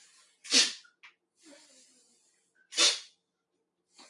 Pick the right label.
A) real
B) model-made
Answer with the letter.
A